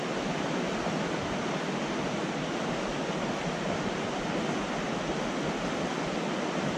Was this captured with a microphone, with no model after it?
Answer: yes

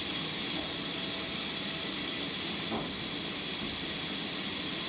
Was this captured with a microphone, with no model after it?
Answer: yes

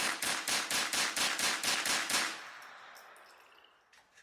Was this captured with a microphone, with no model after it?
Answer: yes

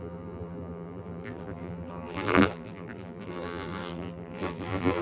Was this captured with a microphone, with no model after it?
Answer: no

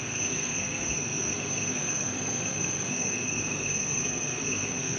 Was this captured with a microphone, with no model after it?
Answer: no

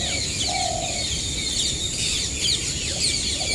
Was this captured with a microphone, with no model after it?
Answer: yes